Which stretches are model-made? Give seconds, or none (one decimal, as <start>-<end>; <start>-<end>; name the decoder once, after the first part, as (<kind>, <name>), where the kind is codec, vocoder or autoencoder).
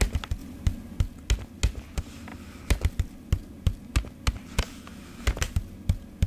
none